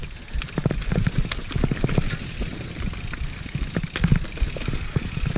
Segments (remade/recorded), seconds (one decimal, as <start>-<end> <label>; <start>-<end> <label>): 0.0-5.4 recorded